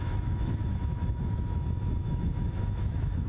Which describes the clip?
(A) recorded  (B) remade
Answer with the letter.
B